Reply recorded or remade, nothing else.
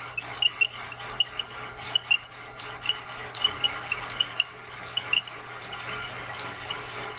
remade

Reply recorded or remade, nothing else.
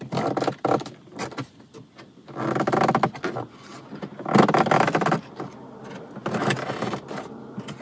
recorded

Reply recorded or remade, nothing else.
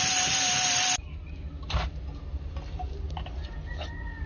recorded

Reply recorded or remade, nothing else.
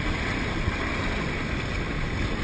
recorded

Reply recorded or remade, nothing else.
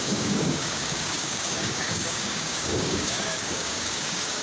remade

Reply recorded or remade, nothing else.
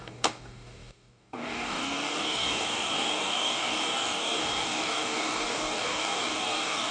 remade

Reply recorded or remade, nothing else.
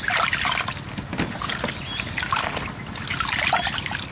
recorded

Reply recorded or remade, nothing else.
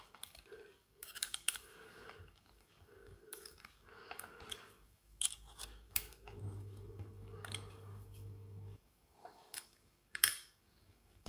remade